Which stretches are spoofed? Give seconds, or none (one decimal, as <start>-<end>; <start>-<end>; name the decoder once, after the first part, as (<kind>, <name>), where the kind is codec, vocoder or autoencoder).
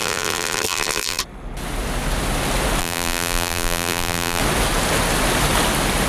0.0-1.2 (vocoder, BigVGAN v2); 2.8-4.4